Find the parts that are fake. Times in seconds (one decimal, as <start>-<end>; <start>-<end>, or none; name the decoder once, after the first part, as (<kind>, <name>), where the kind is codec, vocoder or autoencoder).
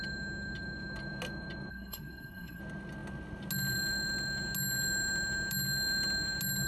1.7-2.6 (codec, SNAC)